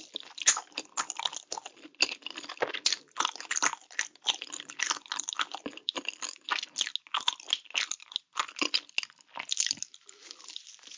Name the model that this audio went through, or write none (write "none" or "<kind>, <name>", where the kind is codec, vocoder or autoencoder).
none